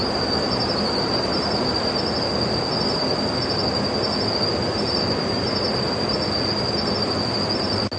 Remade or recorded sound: recorded